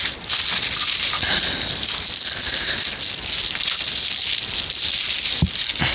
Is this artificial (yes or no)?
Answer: no